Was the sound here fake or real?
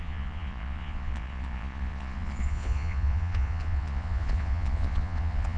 fake